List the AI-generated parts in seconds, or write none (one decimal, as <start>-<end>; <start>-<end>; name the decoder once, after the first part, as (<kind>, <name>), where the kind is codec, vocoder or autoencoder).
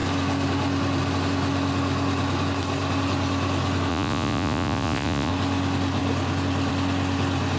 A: 3.9-5.3 (vocoder, Vocos)